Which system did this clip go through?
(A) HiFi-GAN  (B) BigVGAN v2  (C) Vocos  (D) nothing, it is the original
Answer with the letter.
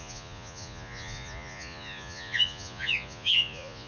C